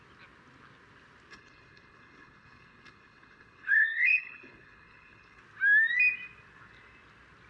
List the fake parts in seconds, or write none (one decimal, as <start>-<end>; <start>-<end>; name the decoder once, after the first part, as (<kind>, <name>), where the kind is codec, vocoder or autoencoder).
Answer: 1.3-5.4 (codec, HILCodec)